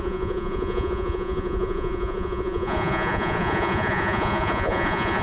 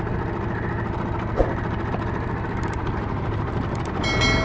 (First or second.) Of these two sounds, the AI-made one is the first